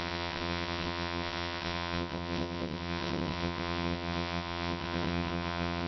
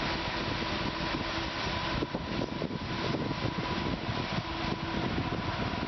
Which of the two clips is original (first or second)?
second